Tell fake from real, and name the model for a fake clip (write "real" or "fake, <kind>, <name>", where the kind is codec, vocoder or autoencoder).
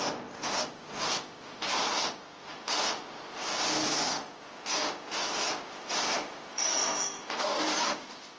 real